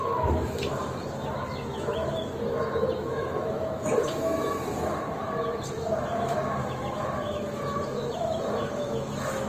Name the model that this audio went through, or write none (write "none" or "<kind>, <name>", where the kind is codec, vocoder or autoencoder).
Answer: autoencoder, DAC-VAE